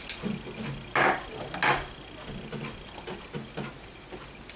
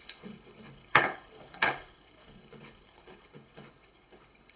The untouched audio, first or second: first